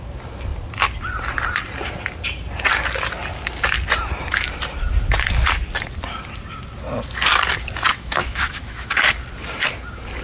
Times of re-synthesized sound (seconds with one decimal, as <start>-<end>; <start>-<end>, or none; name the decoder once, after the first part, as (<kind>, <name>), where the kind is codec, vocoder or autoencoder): 7.9-9.0 (autoencoder, DAC-VAE)